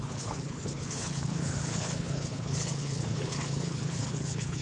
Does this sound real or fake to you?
fake